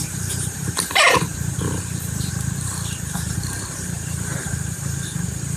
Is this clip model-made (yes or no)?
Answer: yes